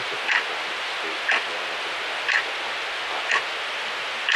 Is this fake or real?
real